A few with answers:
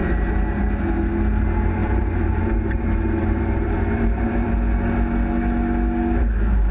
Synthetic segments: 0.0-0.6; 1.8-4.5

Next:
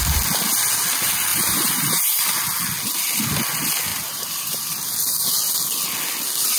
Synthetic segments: 1.3-2.0; 3.9-4.6

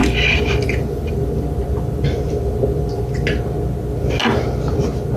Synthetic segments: 0.0-3.1

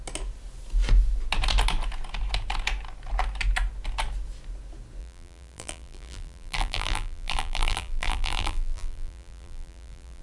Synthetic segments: 5.0-10.2